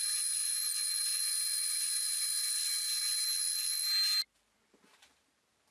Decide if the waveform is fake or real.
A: real